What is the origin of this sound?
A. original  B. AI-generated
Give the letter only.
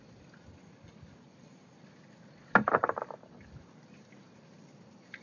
A